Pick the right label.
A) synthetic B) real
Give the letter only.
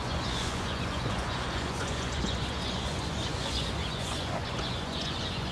A